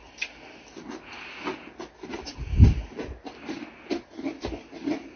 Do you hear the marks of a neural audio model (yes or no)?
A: no